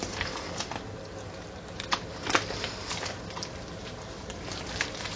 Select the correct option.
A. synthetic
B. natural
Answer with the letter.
B